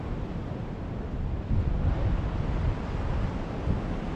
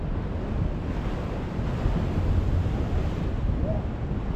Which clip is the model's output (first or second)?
first